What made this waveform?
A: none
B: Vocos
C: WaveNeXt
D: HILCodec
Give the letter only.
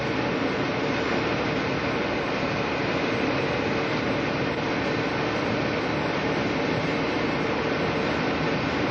A